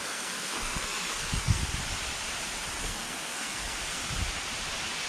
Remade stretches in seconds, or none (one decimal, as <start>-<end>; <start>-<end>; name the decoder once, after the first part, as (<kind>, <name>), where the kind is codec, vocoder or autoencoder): 0.0-1.6 (codec, SNAC); 2.8-4.0